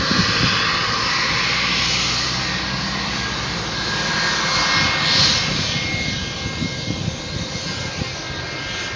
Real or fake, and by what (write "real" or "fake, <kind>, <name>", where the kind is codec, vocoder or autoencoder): real